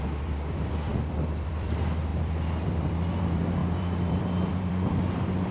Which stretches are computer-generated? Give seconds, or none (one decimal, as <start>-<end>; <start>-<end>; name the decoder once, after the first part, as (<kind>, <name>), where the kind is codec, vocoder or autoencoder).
0.0-5.5 (vocoder, BigVGAN v2)